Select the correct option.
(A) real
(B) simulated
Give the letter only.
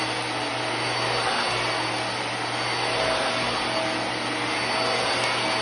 A